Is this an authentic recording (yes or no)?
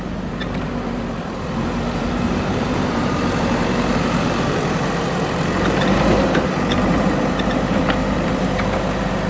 no